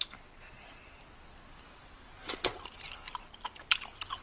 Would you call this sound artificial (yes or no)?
no